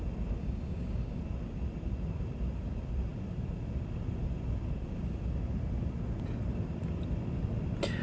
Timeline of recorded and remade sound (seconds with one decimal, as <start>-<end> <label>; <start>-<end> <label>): 0.0-0.4 recorded; 0.4-1.2 remade; 1.2-8.0 recorded